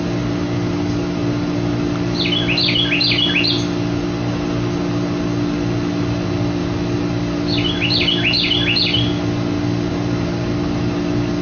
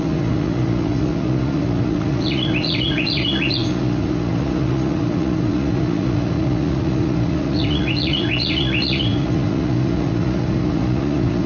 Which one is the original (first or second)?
first